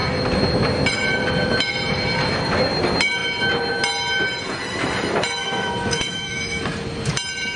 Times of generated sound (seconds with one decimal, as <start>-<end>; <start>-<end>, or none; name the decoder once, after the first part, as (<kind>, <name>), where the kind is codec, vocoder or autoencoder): 5.4-6.6 (autoencoder, DAC-VAE)